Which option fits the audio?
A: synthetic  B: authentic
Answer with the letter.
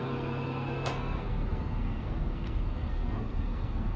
A